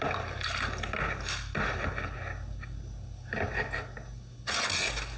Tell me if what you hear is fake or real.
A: real